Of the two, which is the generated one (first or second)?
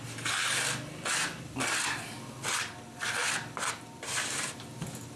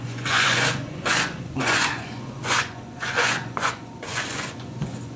second